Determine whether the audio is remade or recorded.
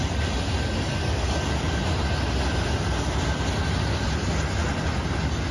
recorded